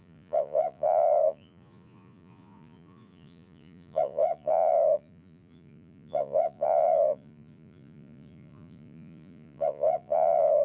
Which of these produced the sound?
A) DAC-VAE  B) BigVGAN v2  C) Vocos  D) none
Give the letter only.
C